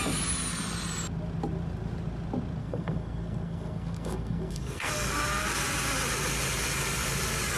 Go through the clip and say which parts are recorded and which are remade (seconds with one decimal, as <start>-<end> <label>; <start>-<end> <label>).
0.0-2.6 recorded; 2.6-4.9 remade; 4.9-7.6 recorded